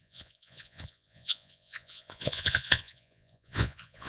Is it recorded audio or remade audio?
remade